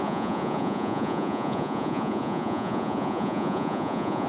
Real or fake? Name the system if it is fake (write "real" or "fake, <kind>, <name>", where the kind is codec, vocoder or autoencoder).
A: fake, vocoder, Vocos